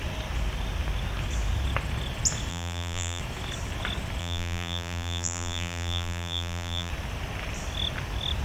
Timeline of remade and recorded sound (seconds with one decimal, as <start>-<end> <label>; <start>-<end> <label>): 0.0-2.5 recorded; 2.5-3.2 remade; 3.2-4.2 recorded; 4.2-6.9 remade; 6.9-8.4 recorded